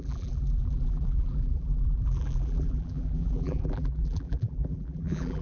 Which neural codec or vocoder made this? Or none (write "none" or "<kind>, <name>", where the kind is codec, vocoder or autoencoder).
vocoder, BigVGAN v2